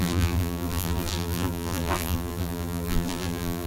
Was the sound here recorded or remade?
remade